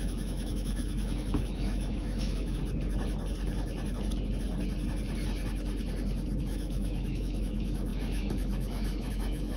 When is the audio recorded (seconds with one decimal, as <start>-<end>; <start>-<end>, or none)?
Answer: 2.6-6.4